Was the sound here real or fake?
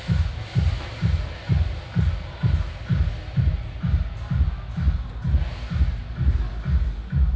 real